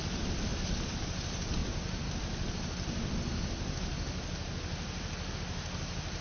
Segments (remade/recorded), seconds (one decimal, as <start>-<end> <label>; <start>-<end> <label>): 0.0-6.2 recorded